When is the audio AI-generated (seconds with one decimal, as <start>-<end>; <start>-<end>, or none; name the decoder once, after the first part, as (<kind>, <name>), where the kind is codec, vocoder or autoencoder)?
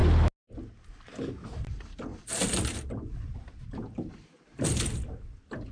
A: none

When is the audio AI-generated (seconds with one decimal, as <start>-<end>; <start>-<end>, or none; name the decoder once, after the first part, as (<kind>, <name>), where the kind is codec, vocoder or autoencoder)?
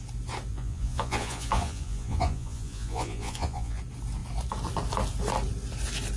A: 0.5-3.8 (vocoder, Vocos)